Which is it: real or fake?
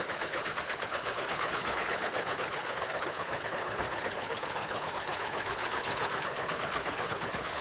fake